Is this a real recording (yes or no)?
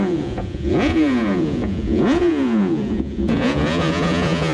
no